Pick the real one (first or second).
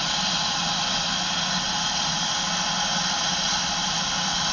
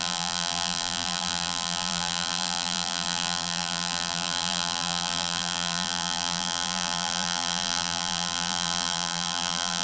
first